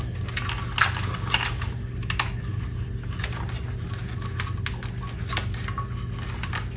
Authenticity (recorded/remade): recorded